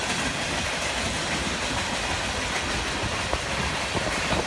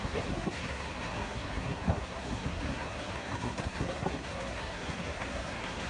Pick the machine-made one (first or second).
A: second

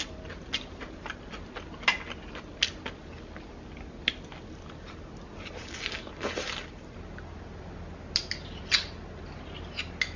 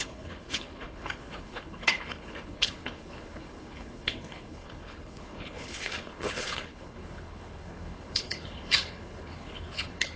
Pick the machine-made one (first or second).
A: second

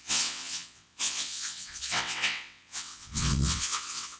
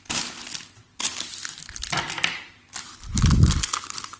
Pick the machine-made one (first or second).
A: first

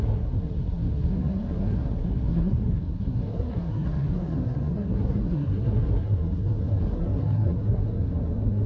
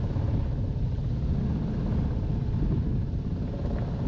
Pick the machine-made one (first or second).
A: first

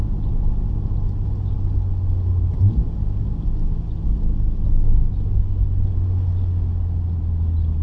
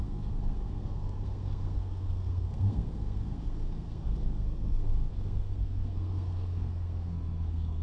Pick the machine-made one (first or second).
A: second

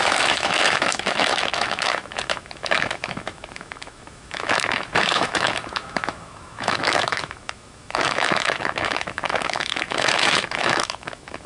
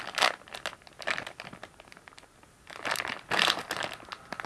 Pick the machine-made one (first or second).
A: first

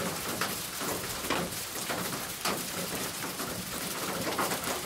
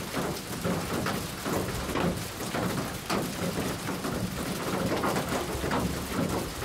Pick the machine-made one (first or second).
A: first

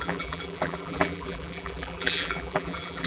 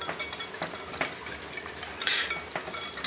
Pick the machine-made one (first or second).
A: first